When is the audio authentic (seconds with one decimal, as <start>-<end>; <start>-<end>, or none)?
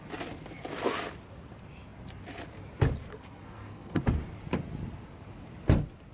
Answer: 0.0-3.1; 4.0-6.1